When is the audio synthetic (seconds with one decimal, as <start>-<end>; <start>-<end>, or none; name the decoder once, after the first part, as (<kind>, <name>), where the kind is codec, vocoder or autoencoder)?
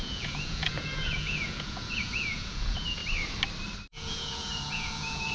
0.0-3.0 (vocoder, Vocos); 3.9-5.3